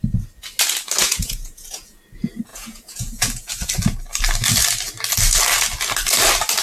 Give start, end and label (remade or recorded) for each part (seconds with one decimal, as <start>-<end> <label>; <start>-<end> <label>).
0.0-1.0 recorded; 1.0-2.0 remade; 2.0-2.5 recorded; 2.5-3.5 remade; 3.5-6.6 recorded